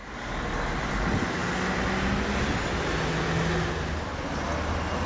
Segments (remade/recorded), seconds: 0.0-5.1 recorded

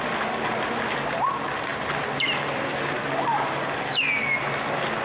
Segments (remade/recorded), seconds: 0.0-5.0 recorded

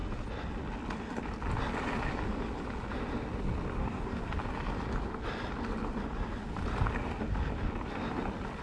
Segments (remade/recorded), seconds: 0.0-3.8 recorded; 3.8-4.3 remade; 4.3-8.6 recorded

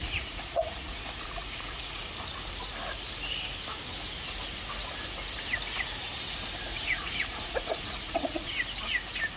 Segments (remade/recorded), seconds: 0.0-2.0 remade; 2.0-6.7 recorded; 6.7-8.5 remade; 8.5-9.4 recorded

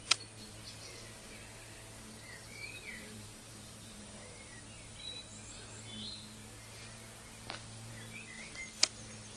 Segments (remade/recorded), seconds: 0.0-2.9 recorded; 2.9-4.6 remade; 4.6-9.4 recorded

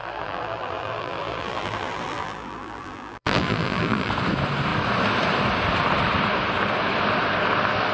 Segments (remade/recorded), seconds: 0.0-4.1 remade; 4.1-7.9 recorded